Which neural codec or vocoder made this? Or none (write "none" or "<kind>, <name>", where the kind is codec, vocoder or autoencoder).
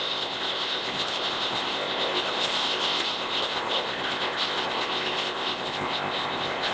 codec, ZipCodec